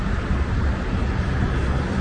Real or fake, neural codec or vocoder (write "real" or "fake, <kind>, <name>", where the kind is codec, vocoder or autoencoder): real